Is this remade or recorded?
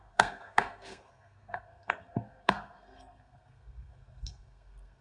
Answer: remade